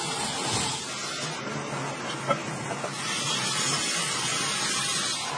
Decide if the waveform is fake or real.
real